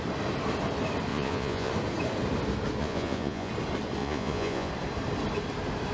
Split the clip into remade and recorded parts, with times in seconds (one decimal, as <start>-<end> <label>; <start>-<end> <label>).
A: 0.0-1.1 recorded; 1.1-1.7 remade; 1.7-2.8 recorded; 2.8-3.5 remade; 3.5-4.0 recorded; 4.0-4.7 remade; 4.7-5.9 recorded